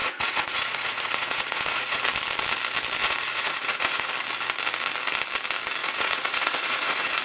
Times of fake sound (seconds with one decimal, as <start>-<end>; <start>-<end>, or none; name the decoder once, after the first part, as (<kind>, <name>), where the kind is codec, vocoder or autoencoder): 0.0-2.0 (vocoder, Vocos); 3.0-4.1; 5.8-7.2

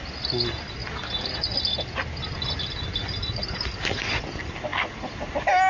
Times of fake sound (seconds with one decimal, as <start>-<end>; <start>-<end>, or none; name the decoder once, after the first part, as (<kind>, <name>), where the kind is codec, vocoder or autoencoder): none

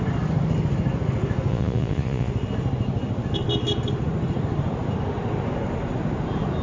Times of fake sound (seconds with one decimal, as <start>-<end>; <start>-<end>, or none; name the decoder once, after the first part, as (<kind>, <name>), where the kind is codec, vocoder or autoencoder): 1.5-2.3 (vocoder, Vocos)